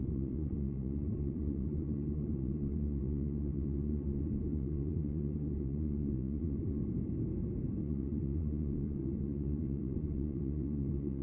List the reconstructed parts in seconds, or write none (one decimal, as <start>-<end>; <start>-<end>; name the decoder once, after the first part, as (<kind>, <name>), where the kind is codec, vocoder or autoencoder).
0.0-6.8 (vocoder, Vocos); 7.8-11.2